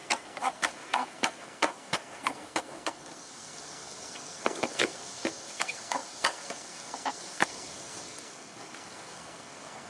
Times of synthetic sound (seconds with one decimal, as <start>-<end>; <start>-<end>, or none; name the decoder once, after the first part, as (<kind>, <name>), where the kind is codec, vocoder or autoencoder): 0.0-9.9 (codec, SNAC)